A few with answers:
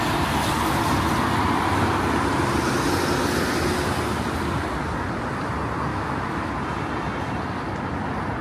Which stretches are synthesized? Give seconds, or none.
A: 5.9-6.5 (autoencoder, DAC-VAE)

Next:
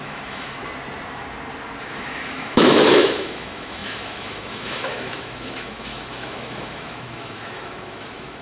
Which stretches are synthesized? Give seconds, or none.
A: 0.0-0.6 (autoencoder, DAC-VAE); 1.8-8.4

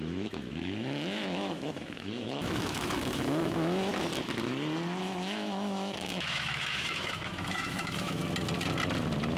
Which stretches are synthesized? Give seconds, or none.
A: 0.0-3.9 (autoencoder, DAC-VAE); 5.0-8.2

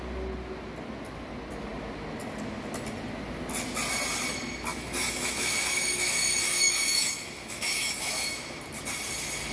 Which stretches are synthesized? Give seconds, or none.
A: 4.7-8.6 (autoencoder, DAC-VAE)

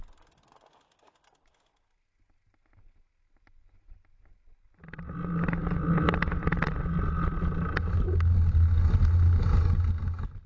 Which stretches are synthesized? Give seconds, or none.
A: none